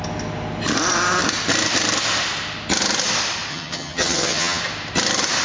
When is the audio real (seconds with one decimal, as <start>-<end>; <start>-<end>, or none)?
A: 0.0-3.5; 4.6-5.4